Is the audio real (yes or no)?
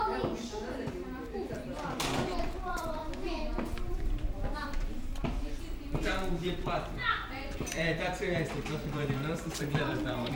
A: no